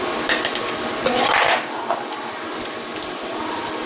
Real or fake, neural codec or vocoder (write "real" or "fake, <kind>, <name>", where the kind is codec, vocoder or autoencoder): real